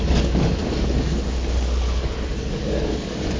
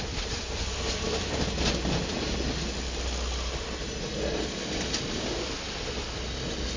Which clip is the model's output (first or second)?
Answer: first